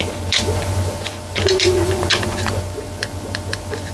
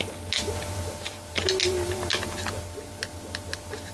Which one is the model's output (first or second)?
first